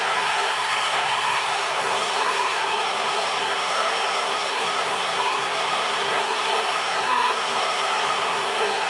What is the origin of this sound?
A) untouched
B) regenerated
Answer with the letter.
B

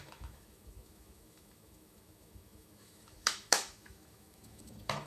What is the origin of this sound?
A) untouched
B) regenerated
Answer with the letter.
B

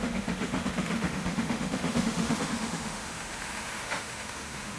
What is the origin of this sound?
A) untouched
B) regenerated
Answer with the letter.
B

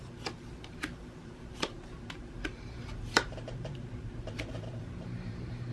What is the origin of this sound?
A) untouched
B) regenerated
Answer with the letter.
B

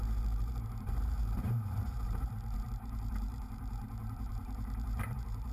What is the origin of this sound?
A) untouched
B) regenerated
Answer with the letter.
B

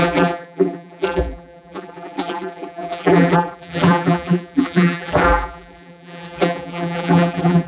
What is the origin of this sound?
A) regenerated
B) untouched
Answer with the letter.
A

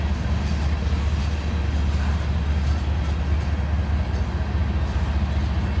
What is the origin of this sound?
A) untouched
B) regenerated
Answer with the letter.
A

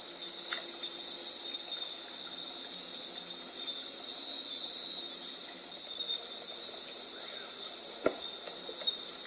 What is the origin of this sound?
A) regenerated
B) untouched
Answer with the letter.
B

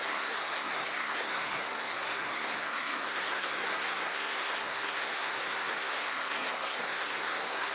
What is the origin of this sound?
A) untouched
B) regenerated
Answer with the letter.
B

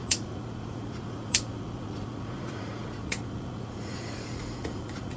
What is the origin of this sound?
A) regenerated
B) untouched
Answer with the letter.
A